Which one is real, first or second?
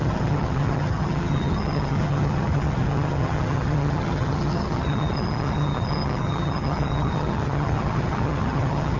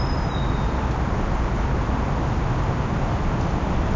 second